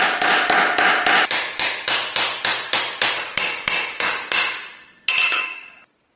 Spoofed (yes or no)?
no